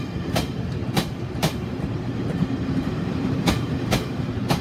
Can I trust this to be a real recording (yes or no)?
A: no